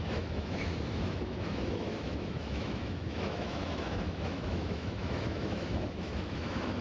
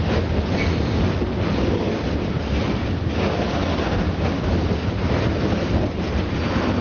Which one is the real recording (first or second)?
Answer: second